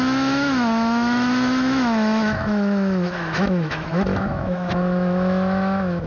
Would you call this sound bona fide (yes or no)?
no